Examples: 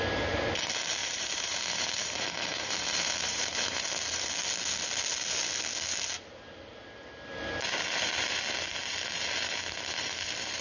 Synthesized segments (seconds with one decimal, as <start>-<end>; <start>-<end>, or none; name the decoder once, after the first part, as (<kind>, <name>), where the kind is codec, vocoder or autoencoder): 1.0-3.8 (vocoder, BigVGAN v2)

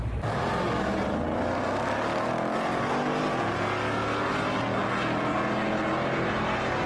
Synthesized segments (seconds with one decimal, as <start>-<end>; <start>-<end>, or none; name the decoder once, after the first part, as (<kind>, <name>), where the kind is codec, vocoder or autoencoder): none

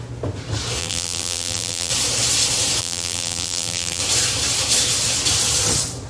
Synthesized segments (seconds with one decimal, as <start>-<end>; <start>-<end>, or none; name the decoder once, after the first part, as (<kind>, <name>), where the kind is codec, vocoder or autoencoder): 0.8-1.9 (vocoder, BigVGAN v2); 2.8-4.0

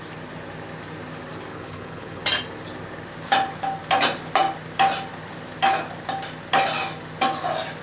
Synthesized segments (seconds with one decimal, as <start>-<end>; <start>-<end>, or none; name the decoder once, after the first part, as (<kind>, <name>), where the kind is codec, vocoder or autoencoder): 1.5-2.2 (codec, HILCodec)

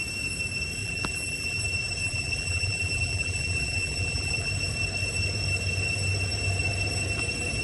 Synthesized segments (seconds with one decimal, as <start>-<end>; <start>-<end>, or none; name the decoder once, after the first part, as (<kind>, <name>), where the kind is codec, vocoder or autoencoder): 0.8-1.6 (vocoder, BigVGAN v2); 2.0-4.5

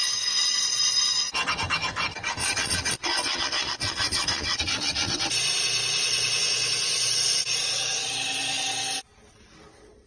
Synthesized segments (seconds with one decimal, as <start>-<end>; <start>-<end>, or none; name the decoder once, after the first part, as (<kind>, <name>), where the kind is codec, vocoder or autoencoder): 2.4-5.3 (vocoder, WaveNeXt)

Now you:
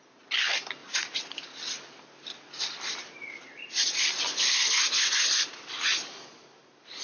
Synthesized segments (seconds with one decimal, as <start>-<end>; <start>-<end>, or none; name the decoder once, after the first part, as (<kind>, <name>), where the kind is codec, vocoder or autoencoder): 0.8-2.6 (vocoder, BigVGAN v2)